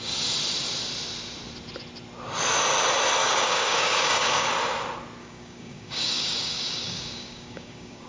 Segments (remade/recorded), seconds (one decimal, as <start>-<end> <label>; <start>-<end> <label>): 0.0-3.2 recorded; 3.2-4.5 remade; 4.5-5.2 recorded; 5.2-8.1 remade